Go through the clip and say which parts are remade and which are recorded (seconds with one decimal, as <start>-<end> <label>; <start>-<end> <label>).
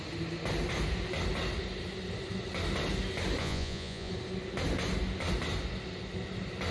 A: 0.0-3.4 recorded; 3.4-4.1 remade; 4.1-6.7 recorded